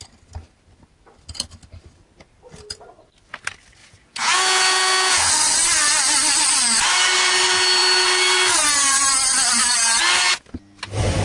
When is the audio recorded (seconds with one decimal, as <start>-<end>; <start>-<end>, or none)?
0.0-3.8; 5.3-11.2